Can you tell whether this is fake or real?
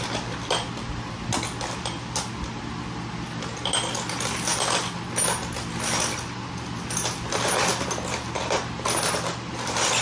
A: real